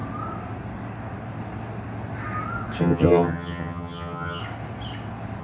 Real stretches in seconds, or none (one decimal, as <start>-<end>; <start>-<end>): 0.0-2.8; 4.4-5.4